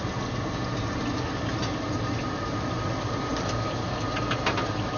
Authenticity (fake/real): real